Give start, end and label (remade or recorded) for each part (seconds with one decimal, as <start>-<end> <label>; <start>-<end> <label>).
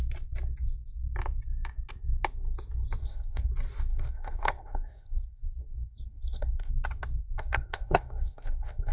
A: 0.0-3.0 recorded; 3.0-3.5 remade; 3.5-3.9 recorded; 3.9-6.7 remade; 6.7-7.2 recorded; 7.2-8.9 remade